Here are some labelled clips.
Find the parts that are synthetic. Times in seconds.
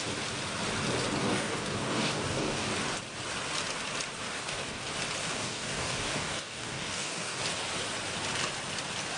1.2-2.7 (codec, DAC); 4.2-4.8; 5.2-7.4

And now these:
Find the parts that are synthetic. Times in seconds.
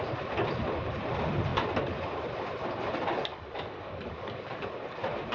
3.3-4.7 (codec, DAC)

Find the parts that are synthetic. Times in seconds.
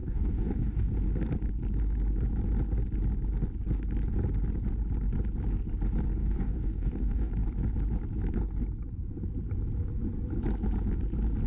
0.0-0.9 (codec, DAC); 6.2-7.3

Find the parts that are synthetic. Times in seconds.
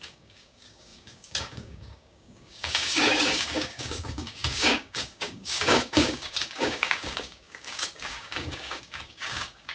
0.0-9.7 (codec, DAC)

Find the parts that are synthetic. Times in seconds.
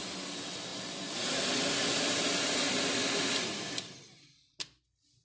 none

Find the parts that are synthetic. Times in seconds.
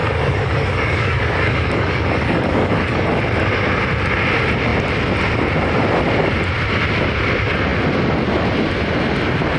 0.0-3.1 (codec, DAC)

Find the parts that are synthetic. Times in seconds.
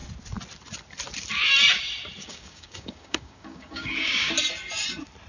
2.2-4.3 (codec, DAC)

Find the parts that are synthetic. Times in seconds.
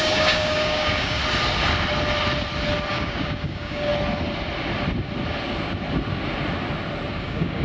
0.0-1.2 (codec, DAC); 2.9-3.9; 7.1-7.6